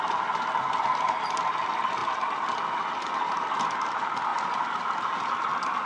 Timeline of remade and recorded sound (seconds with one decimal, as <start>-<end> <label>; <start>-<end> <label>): 0.0-5.9 recorded